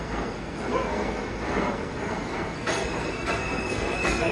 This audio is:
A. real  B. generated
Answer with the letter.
B